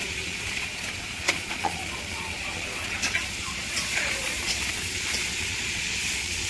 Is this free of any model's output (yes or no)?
no